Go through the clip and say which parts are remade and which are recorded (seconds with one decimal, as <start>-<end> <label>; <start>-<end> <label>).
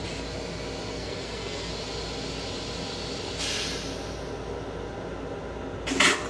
0.0-0.9 recorded; 0.9-1.7 remade; 1.7-6.3 recorded